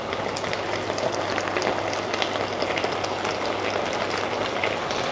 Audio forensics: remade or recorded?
recorded